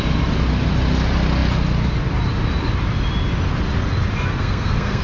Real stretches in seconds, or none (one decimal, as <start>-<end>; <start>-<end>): 0.0-4.3